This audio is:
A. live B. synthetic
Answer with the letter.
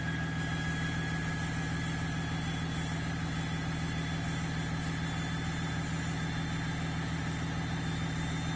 A